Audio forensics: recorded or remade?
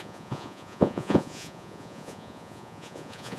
remade